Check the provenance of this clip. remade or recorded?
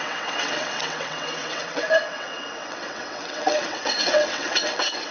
remade